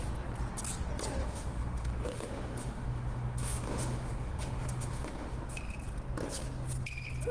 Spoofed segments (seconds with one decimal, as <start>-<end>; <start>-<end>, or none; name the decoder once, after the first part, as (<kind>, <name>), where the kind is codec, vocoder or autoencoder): 1.2-5.6 (autoencoder, DAC-VAE)